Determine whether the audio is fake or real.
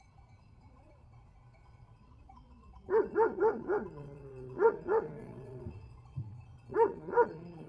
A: fake